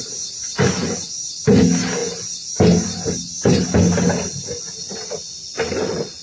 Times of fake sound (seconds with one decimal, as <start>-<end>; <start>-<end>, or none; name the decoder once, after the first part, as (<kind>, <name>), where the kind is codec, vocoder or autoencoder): none